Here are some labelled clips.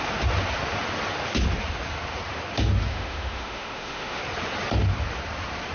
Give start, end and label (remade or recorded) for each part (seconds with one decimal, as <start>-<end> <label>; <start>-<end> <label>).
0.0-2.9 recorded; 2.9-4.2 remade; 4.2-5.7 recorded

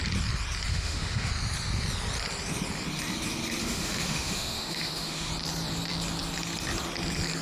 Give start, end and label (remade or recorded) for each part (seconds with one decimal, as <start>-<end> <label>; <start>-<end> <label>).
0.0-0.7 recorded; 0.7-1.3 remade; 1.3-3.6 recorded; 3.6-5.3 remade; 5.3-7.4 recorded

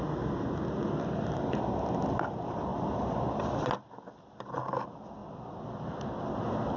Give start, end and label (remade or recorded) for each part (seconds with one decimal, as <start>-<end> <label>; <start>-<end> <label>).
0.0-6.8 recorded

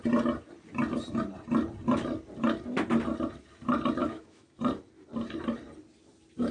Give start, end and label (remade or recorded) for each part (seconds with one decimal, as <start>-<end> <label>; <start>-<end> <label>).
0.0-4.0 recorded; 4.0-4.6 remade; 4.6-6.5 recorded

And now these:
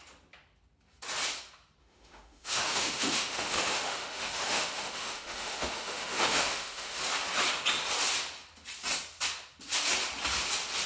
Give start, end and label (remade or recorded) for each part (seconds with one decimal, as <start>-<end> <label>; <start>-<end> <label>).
0.0-1.8 recorded; 1.8-7.0 remade; 7.0-10.9 recorded

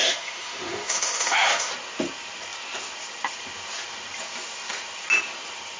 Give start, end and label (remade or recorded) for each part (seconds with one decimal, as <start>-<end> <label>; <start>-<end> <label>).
0.0-1.7 remade; 1.7-5.8 recorded

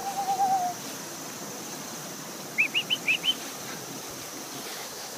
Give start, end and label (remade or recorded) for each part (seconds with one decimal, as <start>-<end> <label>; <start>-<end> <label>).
0.0-4.7 recorded; 4.7-5.2 remade

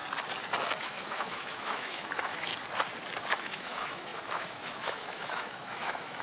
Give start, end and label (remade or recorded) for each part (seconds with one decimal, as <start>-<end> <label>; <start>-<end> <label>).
0.0-0.8 recorded; 0.8-2.5 remade; 2.5-3.4 recorded; 3.4-6.2 remade